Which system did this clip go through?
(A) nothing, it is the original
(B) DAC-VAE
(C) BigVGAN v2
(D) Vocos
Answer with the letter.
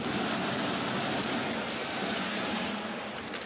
A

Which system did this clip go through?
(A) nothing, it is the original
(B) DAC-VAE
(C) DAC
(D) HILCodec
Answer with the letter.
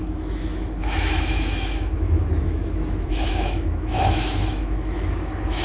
B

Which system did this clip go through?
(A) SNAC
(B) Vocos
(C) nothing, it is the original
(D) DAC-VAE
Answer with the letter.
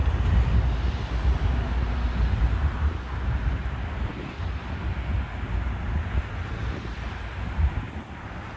C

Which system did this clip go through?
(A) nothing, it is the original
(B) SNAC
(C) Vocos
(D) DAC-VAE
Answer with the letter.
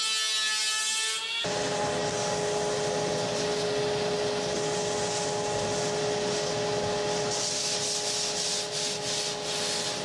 A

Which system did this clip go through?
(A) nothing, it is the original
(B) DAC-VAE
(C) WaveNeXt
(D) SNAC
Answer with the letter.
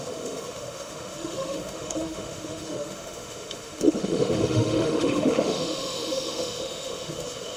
B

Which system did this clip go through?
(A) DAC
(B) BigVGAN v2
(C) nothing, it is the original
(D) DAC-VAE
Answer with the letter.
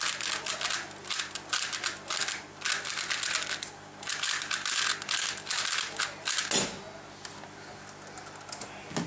C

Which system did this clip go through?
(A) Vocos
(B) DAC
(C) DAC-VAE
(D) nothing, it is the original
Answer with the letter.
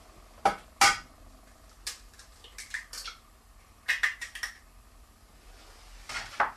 D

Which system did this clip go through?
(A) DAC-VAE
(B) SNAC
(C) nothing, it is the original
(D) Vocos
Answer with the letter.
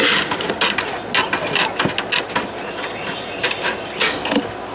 C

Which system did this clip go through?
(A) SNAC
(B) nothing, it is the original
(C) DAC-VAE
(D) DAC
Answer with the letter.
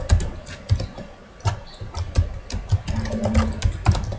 B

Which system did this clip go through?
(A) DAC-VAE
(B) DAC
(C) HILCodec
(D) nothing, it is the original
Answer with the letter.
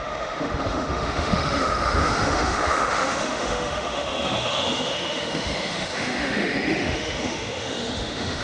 A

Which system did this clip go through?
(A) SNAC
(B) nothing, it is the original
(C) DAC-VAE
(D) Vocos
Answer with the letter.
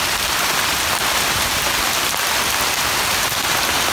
B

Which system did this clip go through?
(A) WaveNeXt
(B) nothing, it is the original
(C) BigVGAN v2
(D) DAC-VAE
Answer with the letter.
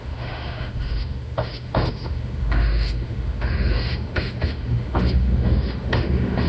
D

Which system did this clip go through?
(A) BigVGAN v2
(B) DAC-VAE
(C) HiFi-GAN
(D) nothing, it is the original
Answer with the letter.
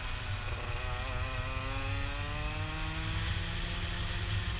D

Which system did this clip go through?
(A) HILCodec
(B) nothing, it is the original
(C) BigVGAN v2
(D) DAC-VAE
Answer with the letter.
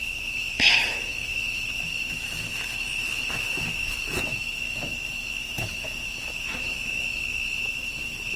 D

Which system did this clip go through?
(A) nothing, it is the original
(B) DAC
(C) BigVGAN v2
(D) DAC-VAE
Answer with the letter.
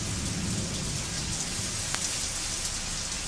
A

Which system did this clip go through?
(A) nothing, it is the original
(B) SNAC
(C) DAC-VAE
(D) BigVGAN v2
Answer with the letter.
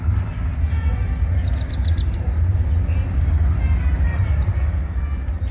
A